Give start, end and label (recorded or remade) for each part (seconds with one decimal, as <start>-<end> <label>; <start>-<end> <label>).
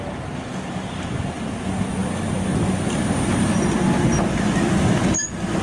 0.0-5.6 recorded